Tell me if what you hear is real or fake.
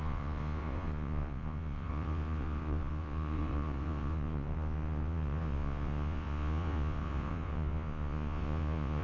fake